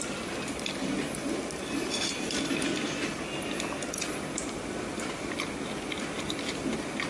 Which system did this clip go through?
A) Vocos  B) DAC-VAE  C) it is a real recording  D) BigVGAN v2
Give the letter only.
C